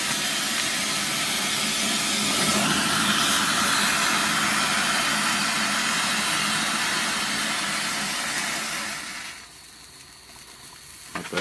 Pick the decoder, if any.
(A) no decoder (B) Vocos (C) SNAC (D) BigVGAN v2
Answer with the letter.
A